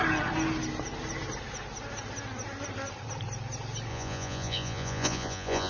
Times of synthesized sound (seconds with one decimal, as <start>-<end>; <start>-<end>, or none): 3.9-5.7